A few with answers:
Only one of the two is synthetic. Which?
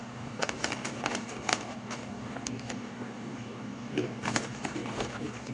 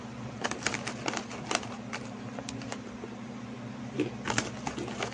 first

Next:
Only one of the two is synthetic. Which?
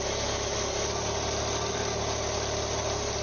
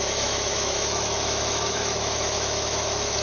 second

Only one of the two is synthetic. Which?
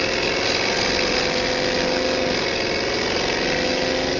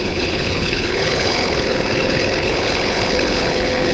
second